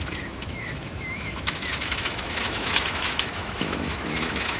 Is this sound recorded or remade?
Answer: remade